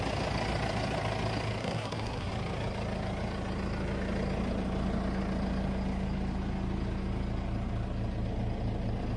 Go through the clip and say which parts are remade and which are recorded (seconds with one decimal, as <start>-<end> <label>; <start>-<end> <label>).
0.0-1.6 recorded; 1.6-2.3 remade; 2.3-9.2 recorded